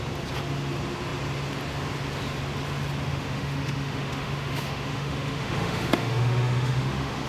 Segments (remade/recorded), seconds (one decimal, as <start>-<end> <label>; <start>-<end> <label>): 0.0-3.1 recorded; 3.1-7.3 remade